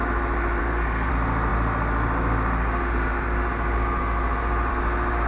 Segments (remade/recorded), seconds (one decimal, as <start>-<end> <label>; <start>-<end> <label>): 0.0-0.6 recorded; 0.6-1.1 remade; 1.1-5.3 recorded